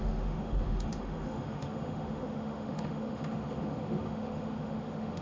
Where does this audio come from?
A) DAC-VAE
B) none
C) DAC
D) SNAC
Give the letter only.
A